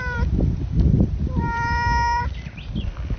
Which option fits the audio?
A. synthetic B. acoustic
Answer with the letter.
B